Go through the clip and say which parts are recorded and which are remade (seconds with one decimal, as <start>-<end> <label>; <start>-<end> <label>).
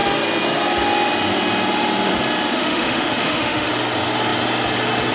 0.0-2.5 recorded; 2.5-3.7 remade; 3.7-5.1 recorded